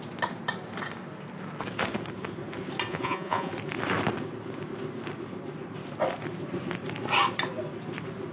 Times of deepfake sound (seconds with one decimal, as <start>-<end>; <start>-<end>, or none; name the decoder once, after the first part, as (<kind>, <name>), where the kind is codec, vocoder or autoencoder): 2.9-3.5 (vocoder, Vocos)